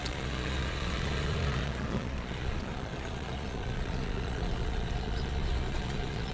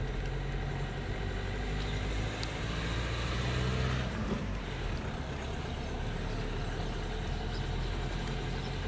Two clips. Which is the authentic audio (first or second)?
second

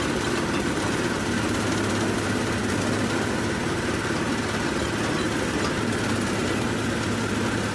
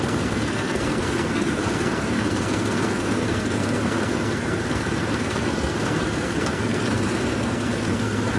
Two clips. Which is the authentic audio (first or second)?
first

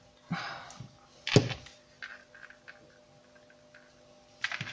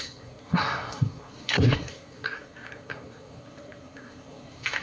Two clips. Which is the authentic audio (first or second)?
first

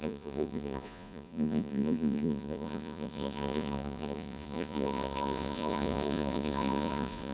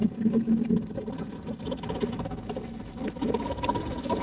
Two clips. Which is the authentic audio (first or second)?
second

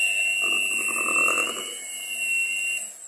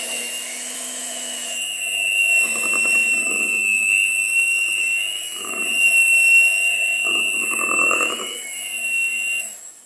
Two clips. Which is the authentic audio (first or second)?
first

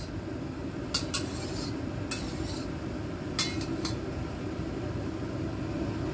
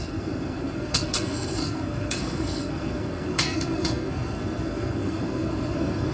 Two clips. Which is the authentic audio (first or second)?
first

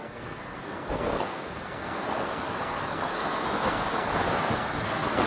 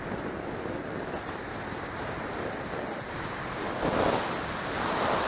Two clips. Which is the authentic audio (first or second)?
second